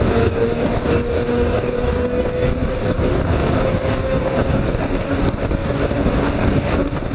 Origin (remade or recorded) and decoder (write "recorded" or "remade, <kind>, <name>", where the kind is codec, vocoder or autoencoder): remade, codec, DAC